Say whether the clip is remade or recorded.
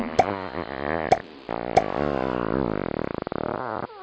recorded